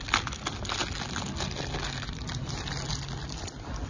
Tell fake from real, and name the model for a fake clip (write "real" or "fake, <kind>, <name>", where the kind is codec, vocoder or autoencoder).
real